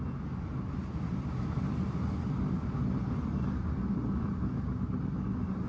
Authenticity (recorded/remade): recorded